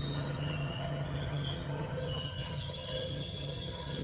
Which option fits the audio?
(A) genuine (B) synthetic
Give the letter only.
B